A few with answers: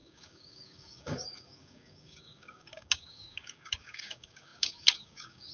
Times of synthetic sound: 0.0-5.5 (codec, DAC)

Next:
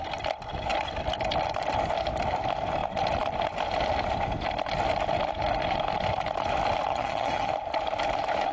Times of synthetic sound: 6.9-7.5 (vocoder, HiFi-GAN)